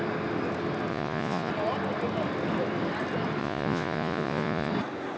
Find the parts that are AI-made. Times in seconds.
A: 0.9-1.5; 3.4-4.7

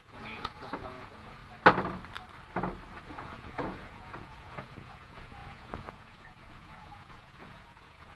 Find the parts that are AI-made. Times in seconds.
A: 0.0-1.4; 3.1-8.2

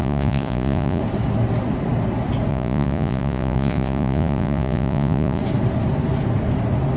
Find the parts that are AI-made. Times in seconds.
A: 0.0-1.0; 2.5-5.4